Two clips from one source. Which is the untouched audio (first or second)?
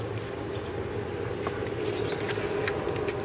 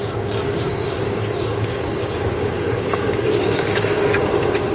first